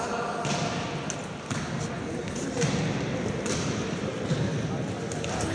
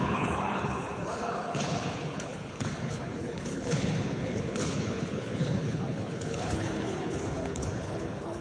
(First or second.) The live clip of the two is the first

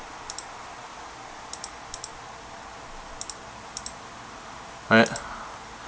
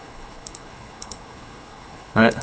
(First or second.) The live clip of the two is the first